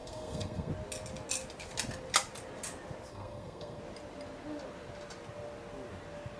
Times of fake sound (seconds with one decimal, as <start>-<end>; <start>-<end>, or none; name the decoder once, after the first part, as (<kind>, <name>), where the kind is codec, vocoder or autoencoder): 0.0-0.7 (codec, SNAC); 3.1-3.8